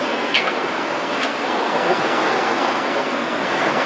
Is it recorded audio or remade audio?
remade